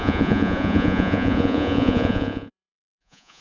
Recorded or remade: remade